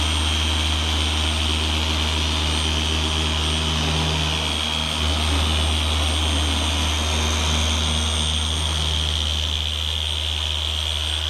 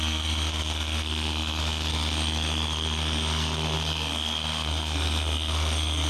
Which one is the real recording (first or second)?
first